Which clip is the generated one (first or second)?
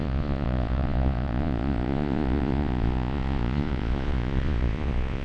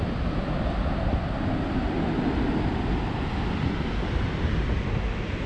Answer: first